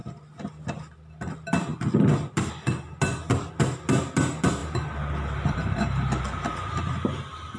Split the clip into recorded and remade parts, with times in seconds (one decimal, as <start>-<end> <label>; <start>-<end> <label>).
0.0-4.6 recorded; 4.6-7.6 remade